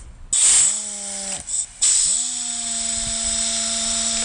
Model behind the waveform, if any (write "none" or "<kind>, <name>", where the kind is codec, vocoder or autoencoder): none